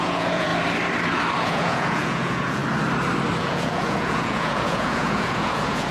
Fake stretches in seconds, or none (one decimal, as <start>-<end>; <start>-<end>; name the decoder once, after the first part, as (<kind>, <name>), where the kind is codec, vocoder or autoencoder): 0.0-0.5 (vocoder, Vocos); 1.4-2.6; 3.4-5.9